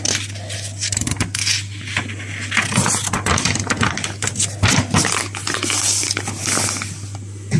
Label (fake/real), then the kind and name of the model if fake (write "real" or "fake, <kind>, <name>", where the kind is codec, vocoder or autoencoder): real